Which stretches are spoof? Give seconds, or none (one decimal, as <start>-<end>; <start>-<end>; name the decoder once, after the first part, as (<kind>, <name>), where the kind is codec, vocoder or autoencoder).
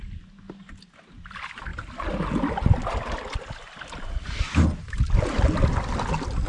none